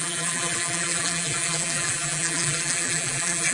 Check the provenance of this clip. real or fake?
fake